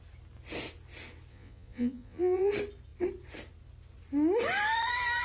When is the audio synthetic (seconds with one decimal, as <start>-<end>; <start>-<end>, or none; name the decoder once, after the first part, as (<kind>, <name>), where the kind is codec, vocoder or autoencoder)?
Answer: 1.3-2.5 (vocoder, Vocos)